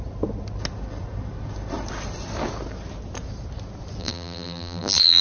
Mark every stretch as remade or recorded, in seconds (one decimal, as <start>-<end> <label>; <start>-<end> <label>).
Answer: 0.0-4.0 recorded; 4.0-5.2 remade